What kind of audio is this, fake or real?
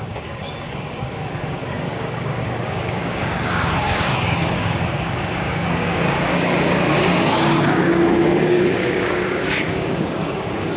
fake